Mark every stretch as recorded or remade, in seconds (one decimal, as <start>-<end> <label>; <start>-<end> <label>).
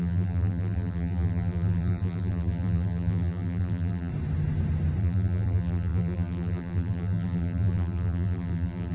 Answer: 0.0-4.1 remade; 4.1-5.0 recorded; 5.0-8.9 remade